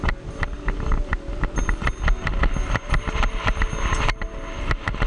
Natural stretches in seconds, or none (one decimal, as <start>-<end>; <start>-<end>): 0.0-5.1